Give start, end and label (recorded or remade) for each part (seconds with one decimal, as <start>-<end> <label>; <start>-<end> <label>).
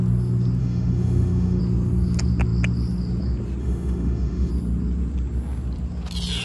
0.0-0.6 recorded; 0.6-1.6 remade; 1.6-3.6 recorded; 3.6-4.5 remade; 4.5-6.4 recorded